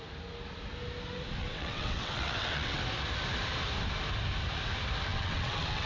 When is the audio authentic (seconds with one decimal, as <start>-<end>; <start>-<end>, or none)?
0.0-1.4; 2.8-5.1